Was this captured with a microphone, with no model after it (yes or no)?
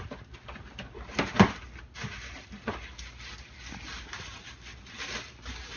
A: yes